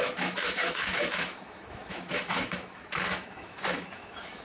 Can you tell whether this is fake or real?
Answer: fake